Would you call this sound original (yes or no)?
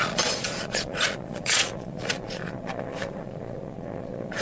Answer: no